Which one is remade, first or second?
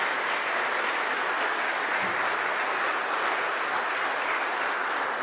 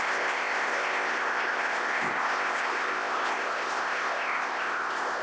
second